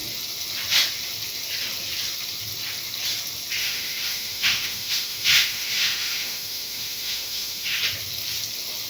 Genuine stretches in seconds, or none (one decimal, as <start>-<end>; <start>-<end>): 0.0-3.6; 7.8-8.9